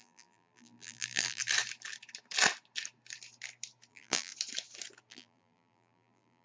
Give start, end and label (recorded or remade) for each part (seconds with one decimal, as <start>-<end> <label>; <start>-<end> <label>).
0.0-1.4 remade; 1.4-3.9 recorded; 3.9-4.3 remade; 4.3-5.1 recorded; 5.1-6.4 remade